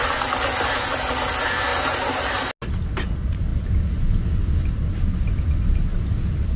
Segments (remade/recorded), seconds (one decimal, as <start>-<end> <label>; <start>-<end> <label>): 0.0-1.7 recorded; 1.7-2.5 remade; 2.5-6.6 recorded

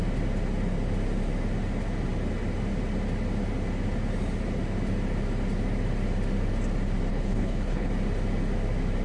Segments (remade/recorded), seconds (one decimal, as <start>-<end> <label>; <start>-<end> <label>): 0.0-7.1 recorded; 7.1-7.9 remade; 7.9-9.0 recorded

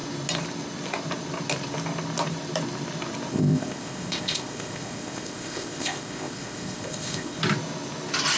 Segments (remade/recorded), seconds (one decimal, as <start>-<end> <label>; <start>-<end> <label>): 0.0-3.3 recorded; 3.3-7.4 remade; 7.4-8.4 recorded

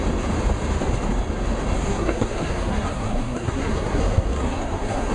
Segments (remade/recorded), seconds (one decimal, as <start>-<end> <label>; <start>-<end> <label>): 0.0-1.9 recorded; 1.9-5.1 remade

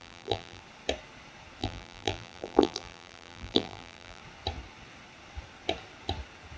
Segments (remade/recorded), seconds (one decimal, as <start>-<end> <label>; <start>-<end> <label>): 0.0-0.6 remade; 0.6-1.6 recorded; 1.6-4.2 remade; 4.2-6.6 recorded

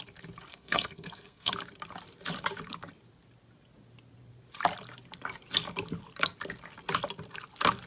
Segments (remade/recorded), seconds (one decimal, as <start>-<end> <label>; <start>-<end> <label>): 0.0-0.5 recorded; 0.5-1.5 remade; 1.5-7.9 recorded